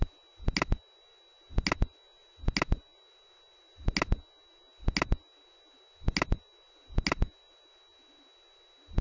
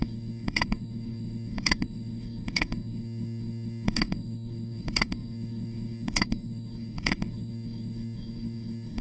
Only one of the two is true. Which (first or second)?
first